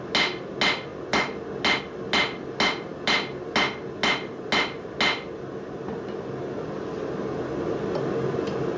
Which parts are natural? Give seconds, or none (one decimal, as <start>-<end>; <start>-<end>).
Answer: 0.0-8.8